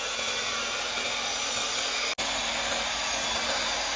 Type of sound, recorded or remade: recorded